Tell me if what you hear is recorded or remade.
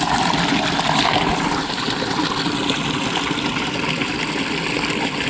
recorded